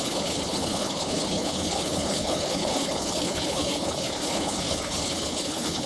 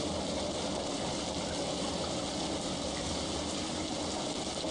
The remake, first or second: first